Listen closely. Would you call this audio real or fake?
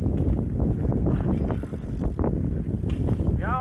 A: real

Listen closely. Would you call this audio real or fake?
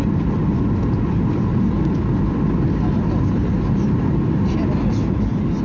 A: real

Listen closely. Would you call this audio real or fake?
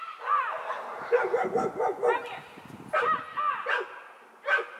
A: real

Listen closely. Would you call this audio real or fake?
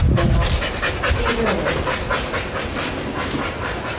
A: real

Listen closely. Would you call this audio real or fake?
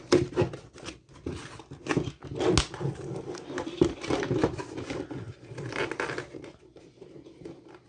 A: real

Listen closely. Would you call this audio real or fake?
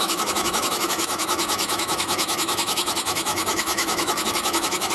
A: fake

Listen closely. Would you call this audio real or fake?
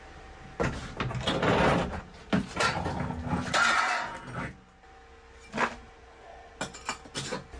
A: real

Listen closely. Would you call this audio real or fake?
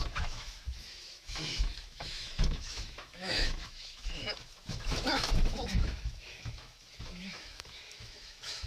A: fake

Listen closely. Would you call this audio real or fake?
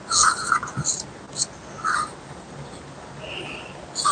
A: real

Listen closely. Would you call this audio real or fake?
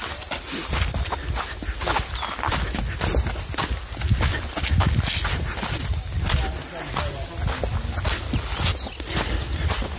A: real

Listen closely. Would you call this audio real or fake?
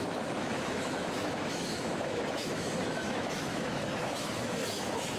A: fake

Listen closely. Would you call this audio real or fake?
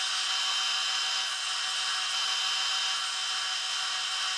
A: real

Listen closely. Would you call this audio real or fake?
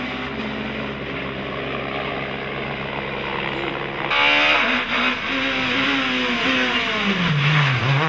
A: real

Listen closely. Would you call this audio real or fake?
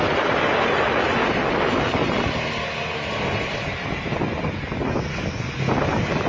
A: real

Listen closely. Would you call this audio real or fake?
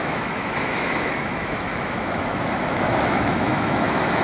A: fake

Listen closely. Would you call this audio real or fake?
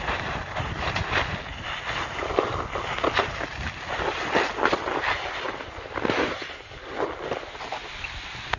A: real